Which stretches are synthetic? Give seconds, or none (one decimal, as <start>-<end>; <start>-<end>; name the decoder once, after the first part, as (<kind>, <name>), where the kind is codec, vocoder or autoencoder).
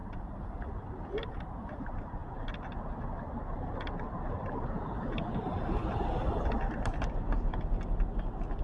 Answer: 0.0-0.7 (vocoder, BigVGAN v2); 1.2-1.8